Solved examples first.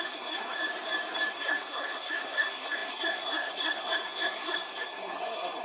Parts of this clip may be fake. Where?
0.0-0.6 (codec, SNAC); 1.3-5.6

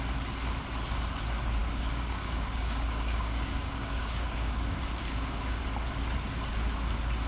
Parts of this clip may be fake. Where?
1.6-5.6 (codec, DAC)

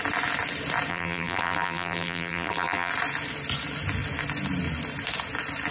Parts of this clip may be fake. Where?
0.9-2.9 (vocoder, BigVGAN v2)